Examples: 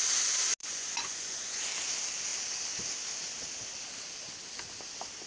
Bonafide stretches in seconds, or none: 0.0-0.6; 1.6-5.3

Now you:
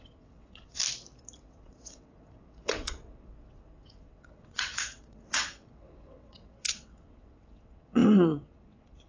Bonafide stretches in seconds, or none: 0.8-1.4

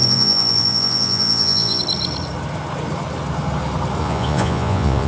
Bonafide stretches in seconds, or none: 1.8-4.0

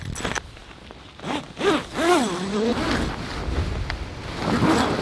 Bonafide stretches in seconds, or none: 0.0-5.0

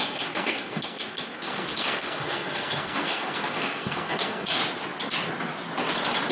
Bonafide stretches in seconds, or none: 4.6-6.3